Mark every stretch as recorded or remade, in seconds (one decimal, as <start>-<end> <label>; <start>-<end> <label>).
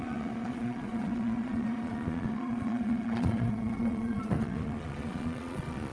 0.0-5.9 remade